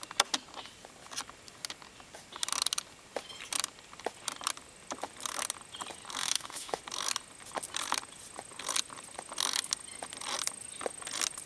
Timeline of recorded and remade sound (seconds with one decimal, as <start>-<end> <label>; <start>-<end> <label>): 0.0-6.2 recorded; 6.2-6.8 remade; 6.8-11.5 recorded